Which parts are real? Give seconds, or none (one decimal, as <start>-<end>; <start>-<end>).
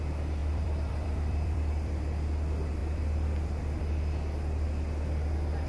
0.0-0.4; 2.0-2.8; 3.8-5.7